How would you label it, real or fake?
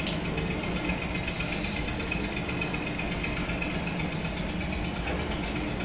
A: real